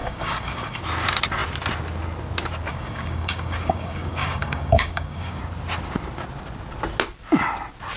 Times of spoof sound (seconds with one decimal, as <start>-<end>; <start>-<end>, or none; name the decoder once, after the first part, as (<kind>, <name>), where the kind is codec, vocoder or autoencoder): 0.0-0.8 (codec, DAC); 2.7-5.4

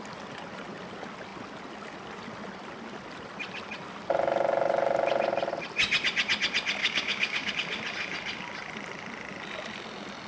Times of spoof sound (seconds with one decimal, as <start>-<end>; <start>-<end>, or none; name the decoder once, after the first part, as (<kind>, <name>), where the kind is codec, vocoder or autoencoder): 6.8-7.5 (codec, DAC)

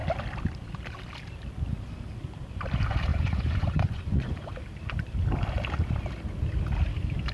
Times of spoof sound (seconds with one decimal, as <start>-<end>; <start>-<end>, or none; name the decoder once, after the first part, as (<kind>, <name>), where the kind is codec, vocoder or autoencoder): 3.1-4.5 (vocoder, Vocos)

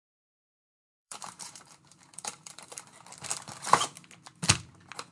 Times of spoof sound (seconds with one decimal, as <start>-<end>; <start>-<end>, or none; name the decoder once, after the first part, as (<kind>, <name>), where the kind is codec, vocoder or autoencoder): 0.5-2.8 (vocoder, BigVGAN v2)

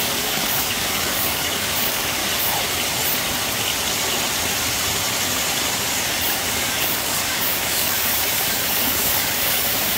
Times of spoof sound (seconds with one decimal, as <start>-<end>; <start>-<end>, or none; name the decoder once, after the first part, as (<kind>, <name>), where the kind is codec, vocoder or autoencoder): 0.0-2.2 (codec, DAC); 6.5-10.0

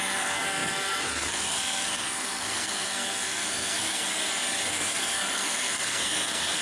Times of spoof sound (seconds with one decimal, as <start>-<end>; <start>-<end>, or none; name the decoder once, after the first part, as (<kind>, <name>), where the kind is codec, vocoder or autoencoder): 0.0-4.1 (codec, SNAC); 4.7-6.6